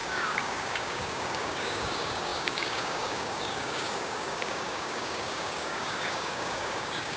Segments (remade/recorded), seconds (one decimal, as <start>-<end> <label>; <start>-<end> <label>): 0.0-7.2 remade